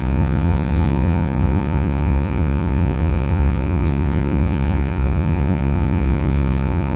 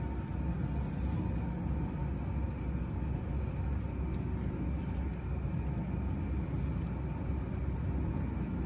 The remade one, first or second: first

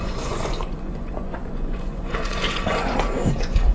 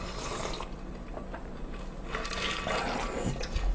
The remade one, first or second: first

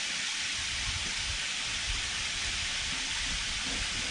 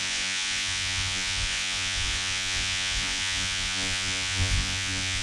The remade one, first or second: second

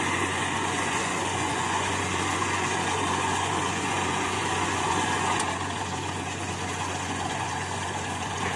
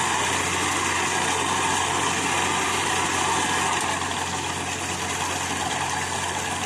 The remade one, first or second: first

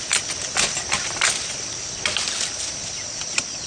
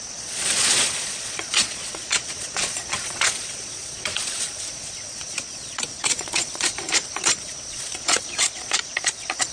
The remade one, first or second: second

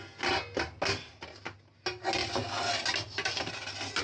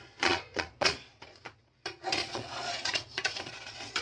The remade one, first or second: second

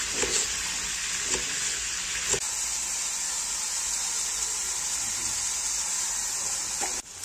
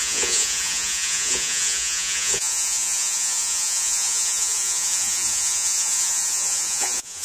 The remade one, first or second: second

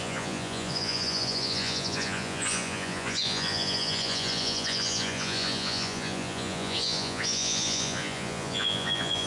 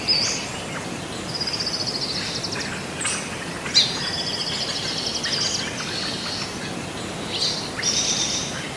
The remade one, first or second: first